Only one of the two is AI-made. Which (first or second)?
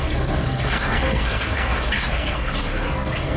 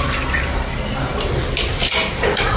first